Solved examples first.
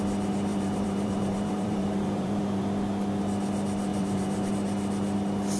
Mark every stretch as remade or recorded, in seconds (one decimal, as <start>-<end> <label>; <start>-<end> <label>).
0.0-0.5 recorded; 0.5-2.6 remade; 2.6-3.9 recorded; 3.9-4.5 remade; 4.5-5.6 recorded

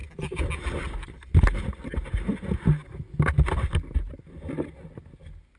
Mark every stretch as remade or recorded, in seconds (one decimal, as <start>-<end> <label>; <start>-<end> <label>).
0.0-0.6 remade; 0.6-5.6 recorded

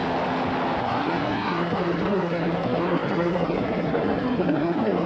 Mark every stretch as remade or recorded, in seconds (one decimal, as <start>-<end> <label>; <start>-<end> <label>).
0.0-0.8 recorded; 0.8-5.1 remade